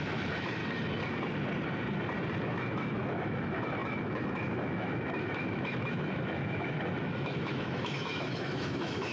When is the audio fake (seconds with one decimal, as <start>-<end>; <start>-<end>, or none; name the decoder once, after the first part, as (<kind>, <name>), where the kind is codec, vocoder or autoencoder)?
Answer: 0.0-0.6 (autoencoder, DAC-VAE); 2.4-9.1